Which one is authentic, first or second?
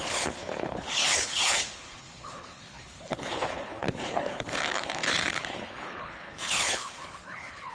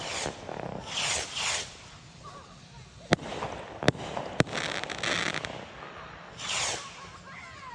second